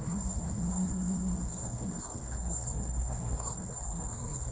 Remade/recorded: remade